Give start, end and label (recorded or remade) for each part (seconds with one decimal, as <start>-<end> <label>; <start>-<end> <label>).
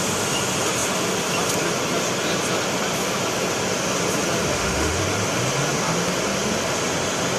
0.0-4.5 recorded; 4.5-5.0 remade; 5.0-7.4 recorded